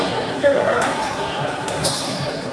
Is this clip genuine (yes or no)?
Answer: no